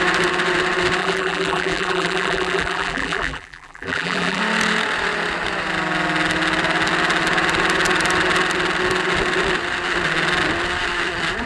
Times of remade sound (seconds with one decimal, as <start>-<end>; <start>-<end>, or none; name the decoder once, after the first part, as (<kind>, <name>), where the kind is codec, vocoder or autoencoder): 1.0-4.4 (vocoder, BigVGAN v2)